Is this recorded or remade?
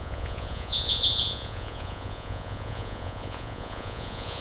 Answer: remade